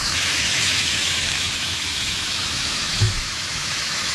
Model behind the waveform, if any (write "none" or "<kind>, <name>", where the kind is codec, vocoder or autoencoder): autoencoder, DAC-VAE